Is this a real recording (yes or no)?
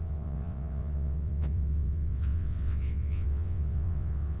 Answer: no